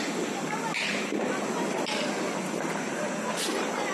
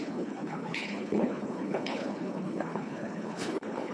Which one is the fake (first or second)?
second